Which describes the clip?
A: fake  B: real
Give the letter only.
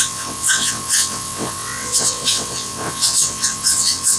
A